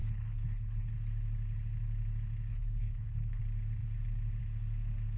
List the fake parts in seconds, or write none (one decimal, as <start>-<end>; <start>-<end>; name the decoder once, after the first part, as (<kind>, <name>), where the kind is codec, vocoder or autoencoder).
0.0-0.9 (codec, HILCodec); 2.5-3.4